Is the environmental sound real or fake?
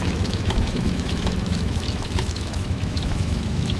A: fake